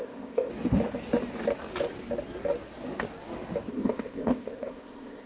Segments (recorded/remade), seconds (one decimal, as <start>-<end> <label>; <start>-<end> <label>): 0.0-0.5 remade; 0.5-3.7 recorded; 3.7-5.3 remade

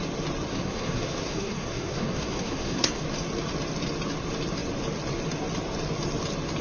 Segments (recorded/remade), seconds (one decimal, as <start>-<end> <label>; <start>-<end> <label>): 0.0-0.5 recorded; 0.5-3.0 remade; 3.0-6.6 recorded

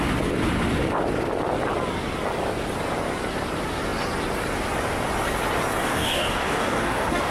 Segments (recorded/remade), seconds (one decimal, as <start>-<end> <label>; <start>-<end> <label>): 0.0-5.8 recorded; 5.8-7.3 remade

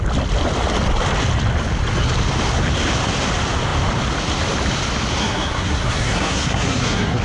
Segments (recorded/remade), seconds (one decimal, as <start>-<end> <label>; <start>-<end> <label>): 0.0-5.2 recorded; 5.2-7.2 remade

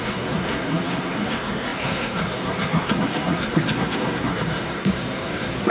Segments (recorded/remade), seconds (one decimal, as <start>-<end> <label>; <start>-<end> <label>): 0.0-5.7 remade